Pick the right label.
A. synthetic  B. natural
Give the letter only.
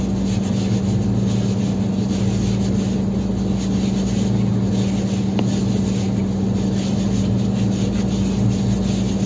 B